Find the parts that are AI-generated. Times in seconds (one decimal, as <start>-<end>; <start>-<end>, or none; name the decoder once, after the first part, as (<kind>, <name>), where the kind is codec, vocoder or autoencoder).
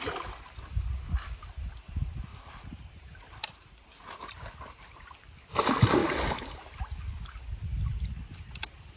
2.3-5.0 (vocoder, BigVGAN v2)